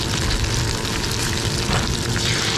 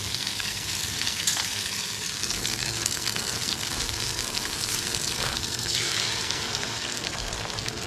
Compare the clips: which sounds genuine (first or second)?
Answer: first